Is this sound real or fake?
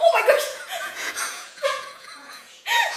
fake